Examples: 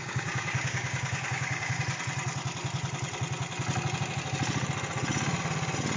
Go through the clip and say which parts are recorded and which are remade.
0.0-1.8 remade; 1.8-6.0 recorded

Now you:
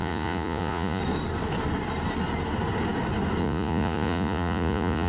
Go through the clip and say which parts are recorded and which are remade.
0.0-1.0 remade; 1.0-3.4 recorded; 3.4-5.1 remade

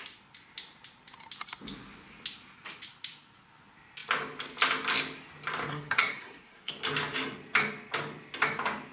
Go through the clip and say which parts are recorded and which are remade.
0.0-5.7 recorded; 5.7-6.7 remade; 6.7-8.9 recorded

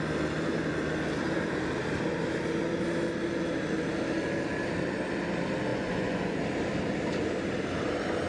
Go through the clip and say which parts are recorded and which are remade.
0.0-5.7 recorded; 5.7-6.4 remade; 6.4-8.3 recorded

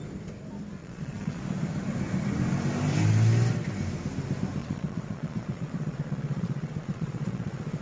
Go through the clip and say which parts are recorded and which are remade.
0.0-0.8 recorded; 0.8-1.4 remade; 1.4-4.6 recorded; 4.6-7.8 remade

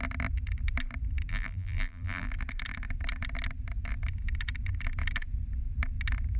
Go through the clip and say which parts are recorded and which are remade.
0.0-1.3 recorded; 1.3-2.3 remade; 2.3-6.4 recorded

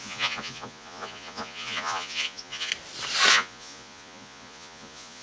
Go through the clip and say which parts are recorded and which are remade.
0.0-2.7 remade; 2.7-3.3 recorded; 3.3-5.2 remade